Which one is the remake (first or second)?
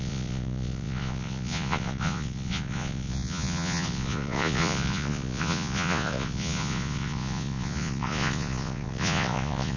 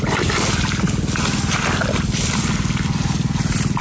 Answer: first